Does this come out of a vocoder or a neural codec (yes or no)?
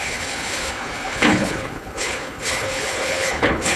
yes